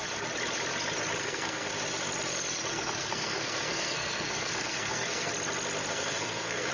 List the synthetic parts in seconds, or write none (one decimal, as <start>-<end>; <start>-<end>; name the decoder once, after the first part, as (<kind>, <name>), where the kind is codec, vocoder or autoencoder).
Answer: 1.2-1.7 (codec, SNAC); 2.7-5.3; 5.9-6.7